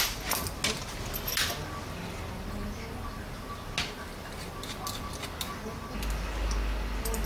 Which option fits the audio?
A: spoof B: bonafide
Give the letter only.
B